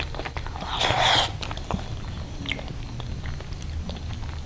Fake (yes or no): no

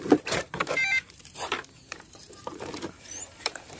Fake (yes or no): yes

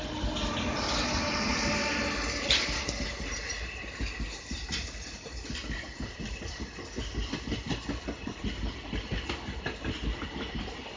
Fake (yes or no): no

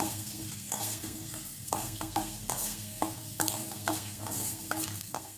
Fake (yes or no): yes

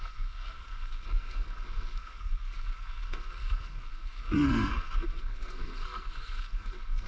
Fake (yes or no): yes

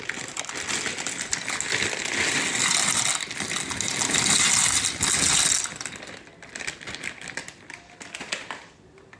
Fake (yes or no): no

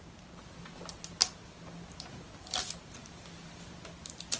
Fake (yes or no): no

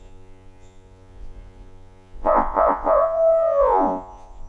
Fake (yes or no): yes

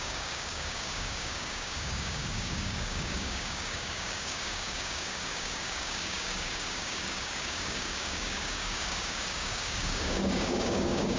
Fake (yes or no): yes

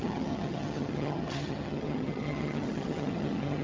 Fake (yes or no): yes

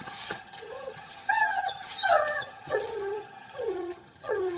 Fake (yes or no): yes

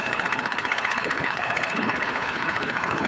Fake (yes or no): yes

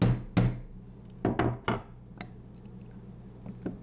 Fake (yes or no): no